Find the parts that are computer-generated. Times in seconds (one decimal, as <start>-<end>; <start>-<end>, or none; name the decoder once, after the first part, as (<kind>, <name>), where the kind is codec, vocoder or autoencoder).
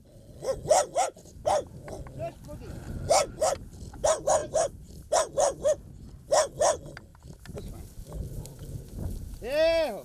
4.4-4.9 (vocoder, BigVGAN v2); 7.1-7.7